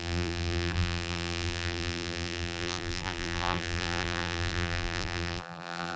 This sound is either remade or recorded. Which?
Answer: remade